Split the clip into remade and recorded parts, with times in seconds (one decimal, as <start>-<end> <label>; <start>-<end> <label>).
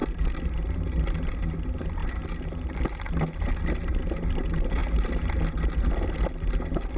0.0-7.0 recorded